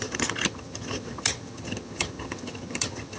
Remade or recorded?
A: remade